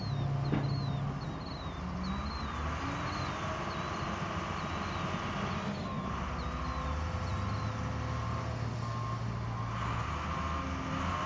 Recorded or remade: recorded